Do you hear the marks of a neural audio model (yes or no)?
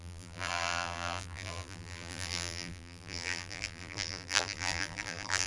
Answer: yes